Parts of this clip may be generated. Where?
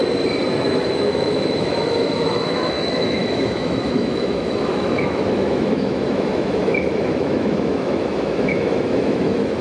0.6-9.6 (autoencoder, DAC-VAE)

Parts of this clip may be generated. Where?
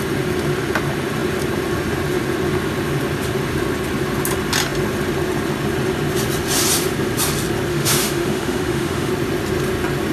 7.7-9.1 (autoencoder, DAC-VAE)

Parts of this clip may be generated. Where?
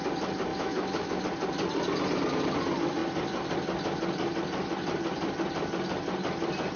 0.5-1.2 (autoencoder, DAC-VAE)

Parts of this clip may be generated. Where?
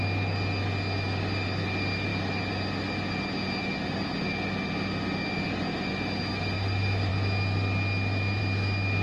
none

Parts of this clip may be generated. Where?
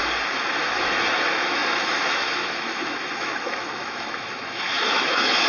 0.6-5.5 (autoencoder, DAC-VAE)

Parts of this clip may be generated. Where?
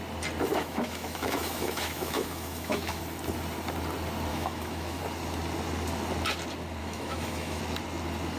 0.5-3.0 (autoencoder, DAC-VAE); 4.3-5.0; 6.8-7.6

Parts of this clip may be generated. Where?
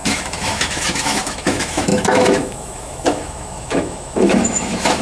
0.0-5.0 (autoencoder, DAC-VAE)